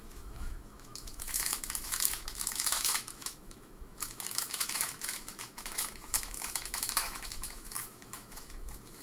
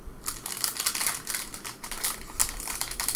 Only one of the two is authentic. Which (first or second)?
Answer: second